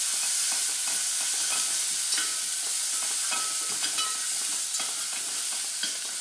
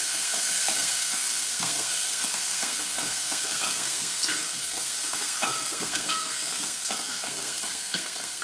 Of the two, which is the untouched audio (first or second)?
first